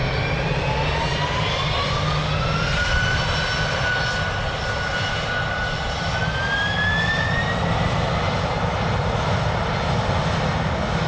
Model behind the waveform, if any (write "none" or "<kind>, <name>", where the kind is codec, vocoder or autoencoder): none